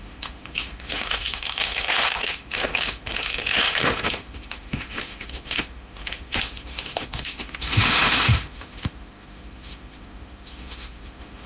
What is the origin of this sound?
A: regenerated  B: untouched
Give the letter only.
A